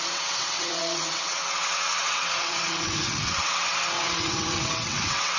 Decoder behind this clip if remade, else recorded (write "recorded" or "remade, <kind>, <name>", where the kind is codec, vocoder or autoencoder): remade, vocoder, WaveNeXt